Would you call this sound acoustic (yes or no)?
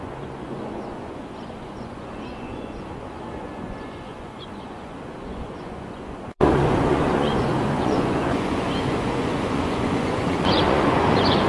no